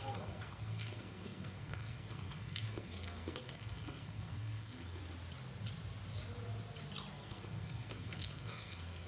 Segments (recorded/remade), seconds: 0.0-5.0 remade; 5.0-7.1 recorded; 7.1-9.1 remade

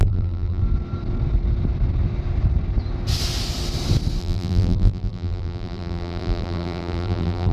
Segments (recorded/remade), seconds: 0.0-0.6 remade; 0.6-4.2 recorded; 4.2-7.5 remade

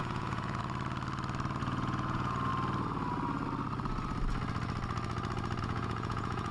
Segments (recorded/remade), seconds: 0.0-0.6 remade; 0.6-1.6 recorded; 1.6-2.5 remade; 2.5-5.6 recorded; 5.6-6.5 remade

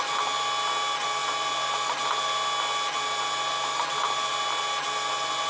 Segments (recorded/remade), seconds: 0.0-5.5 recorded

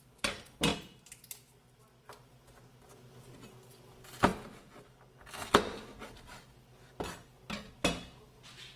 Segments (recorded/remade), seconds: 0.0-8.8 recorded

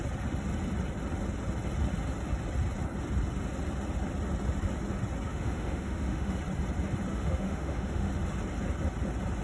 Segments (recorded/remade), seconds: 0.0-5.3 recorded; 5.3-6.4 remade; 6.4-7.1 recorded; 7.1-8.1 remade; 8.1-9.4 recorded

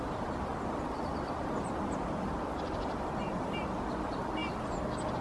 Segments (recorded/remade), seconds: 0.0-0.5 recorded; 0.5-3.6 remade; 3.6-5.2 recorded